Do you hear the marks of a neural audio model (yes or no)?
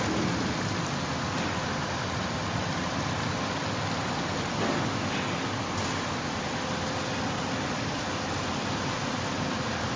no